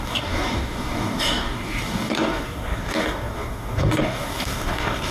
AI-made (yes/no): yes